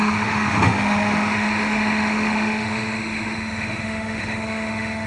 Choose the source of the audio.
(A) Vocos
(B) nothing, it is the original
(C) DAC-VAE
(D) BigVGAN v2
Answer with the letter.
C